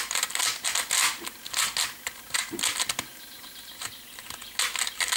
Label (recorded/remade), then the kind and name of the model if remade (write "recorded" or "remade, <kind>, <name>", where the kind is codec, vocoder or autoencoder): recorded